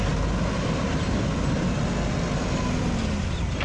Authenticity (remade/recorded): recorded